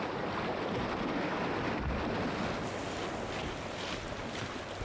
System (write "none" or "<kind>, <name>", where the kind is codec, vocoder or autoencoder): none